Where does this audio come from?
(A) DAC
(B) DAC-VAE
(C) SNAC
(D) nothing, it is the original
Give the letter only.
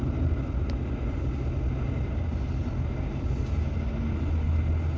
D